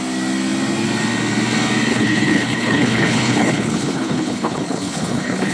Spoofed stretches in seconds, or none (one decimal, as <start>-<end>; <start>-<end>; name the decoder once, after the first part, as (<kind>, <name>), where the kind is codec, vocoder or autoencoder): 1.9-5.5 (codec, HILCodec)